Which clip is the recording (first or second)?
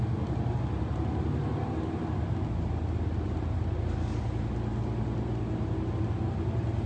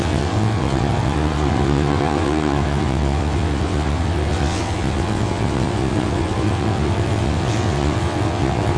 first